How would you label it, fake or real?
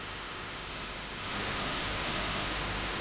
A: fake